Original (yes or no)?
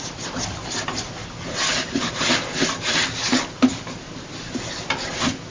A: yes